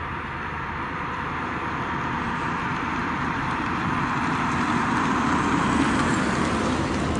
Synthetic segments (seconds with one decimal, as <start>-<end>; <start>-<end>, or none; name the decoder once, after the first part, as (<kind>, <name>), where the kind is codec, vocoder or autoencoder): 2.7-4.3 (vocoder, BigVGAN v2)